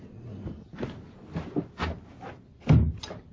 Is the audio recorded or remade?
recorded